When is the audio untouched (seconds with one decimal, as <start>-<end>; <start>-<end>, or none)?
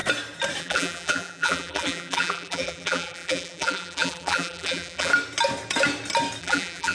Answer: 0.0-0.6; 5.1-6.4